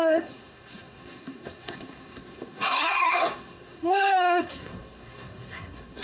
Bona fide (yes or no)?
no